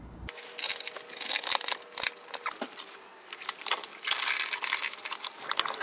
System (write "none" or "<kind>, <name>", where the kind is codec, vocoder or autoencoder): none